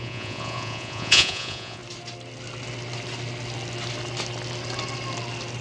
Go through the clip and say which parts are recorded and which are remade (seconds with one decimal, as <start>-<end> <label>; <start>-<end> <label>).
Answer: 0.0-1.8 remade; 1.8-5.6 recorded